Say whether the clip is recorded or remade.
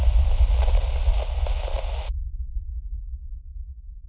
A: recorded